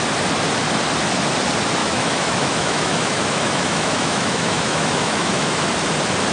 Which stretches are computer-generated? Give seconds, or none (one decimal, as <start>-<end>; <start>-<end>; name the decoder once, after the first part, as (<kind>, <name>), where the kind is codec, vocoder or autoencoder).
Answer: 1.8-5.6 (autoencoder, DAC-VAE)